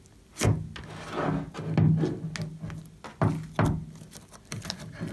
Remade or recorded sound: recorded